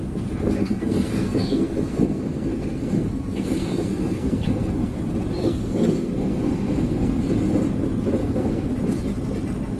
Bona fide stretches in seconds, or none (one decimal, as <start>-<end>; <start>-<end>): 5.0-5.4; 7.2-8.2; 8.7-9.8

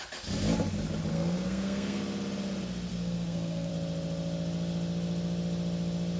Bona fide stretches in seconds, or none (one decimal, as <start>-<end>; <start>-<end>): 0.0-1.1; 2.0-2.9; 3.7-6.2

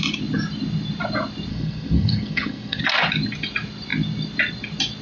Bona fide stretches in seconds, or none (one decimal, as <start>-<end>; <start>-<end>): 0.0-1.5; 2.8-5.0